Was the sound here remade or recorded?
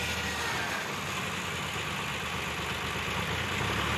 recorded